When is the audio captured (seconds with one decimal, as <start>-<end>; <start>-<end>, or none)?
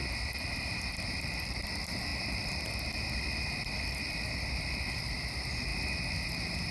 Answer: 0.0-1.2; 5.7-6.3